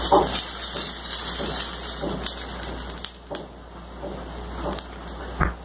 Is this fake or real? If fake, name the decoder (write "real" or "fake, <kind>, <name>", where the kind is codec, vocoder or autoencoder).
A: real